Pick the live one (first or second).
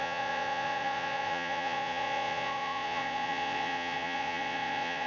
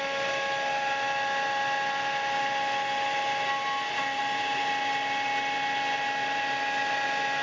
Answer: second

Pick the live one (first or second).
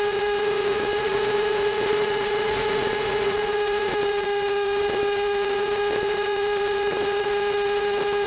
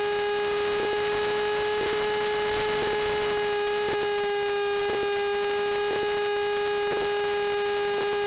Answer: second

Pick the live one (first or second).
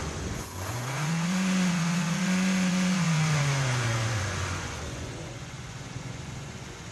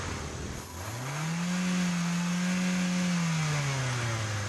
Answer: second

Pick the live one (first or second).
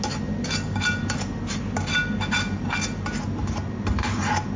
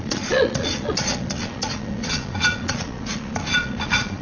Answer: first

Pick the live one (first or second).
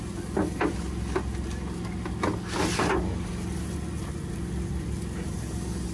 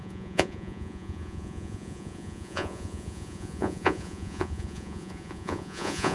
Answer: first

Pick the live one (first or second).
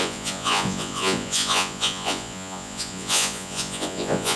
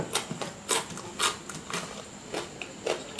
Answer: second